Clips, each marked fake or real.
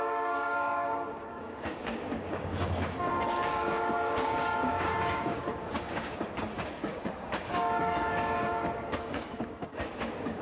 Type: fake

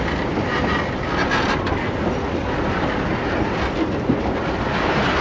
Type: real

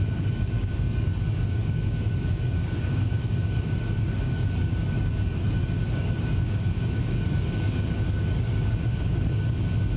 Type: fake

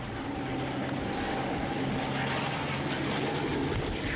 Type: real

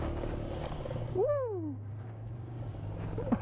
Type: fake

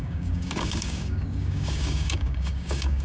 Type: fake